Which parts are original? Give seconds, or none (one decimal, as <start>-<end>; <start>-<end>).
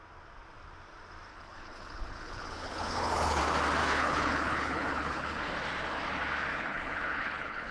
0.0-1.3; 3.4-3.8; 5.5-6.5